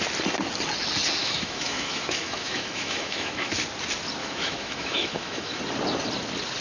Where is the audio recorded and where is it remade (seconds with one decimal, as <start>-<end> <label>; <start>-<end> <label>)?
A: 0.0-1.2 recorded; 1.2-3.5 remade; 3.5-4.2 recorded; 4.2-5.6 remade; 5.6-6.6 recorded